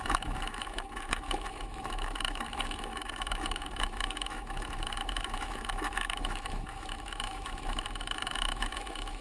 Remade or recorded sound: remade